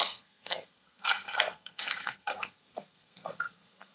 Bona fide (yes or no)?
no